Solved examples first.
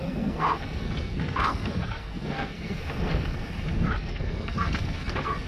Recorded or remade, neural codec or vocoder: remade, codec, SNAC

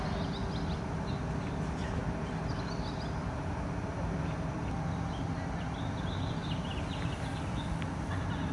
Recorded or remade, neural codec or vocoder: recorded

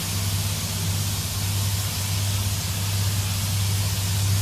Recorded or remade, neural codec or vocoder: recorded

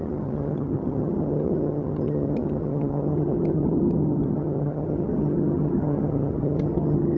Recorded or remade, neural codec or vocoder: remade, vocoder, HiFi-GAN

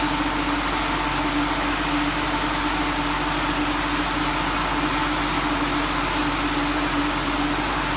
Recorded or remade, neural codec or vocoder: recorded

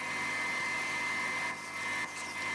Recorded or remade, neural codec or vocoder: recorded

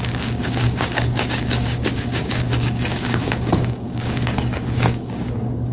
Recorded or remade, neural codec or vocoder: remade, codec, DAC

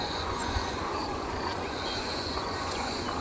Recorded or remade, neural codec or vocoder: remade, vocoder, Vocos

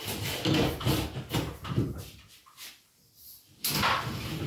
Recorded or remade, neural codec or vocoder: remade, vocoder, BigVGAN v2